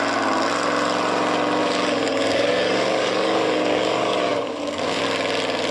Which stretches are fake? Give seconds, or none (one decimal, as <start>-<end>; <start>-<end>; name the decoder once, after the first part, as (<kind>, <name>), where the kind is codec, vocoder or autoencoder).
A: 1.6-5.0 (codec, DAC)